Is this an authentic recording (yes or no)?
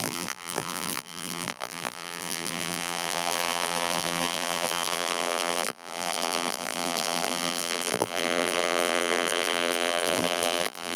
no